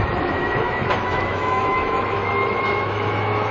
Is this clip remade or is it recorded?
remade